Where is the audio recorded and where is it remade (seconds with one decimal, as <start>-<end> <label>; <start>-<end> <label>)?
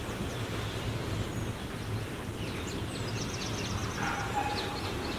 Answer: 0.0-5.2 recorded